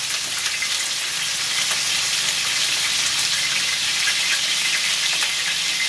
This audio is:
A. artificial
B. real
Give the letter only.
B